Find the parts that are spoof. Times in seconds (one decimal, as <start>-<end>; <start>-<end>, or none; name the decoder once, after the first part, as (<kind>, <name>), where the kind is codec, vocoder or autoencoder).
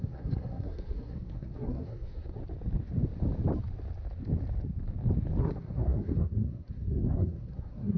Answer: 0.0-2.4 (codec, SNAC); 5.4-8.0